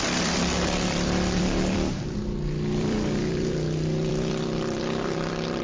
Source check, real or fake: fake